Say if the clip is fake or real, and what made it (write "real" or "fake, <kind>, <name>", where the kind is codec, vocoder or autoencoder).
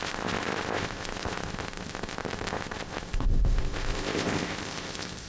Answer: fake, codec, ZipCodec